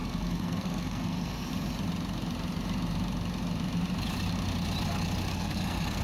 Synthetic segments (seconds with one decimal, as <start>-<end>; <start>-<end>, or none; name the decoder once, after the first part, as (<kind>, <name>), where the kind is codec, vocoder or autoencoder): 0.0-1.5 (codec, SNAC); 5.3-6.0